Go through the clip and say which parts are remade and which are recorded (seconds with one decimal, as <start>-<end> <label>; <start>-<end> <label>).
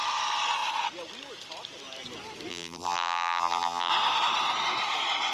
0.0-2.5 recorded; 2.5-3.9 remade; 3.9-5.3 recorded